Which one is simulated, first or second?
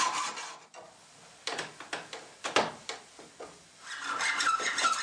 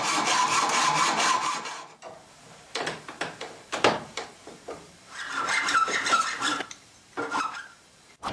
second